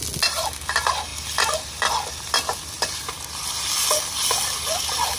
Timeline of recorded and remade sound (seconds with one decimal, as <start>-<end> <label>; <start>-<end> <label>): 0.0-5.2 recorded